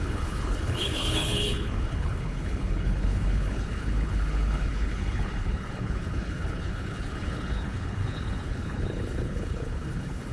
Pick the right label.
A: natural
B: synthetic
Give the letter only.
B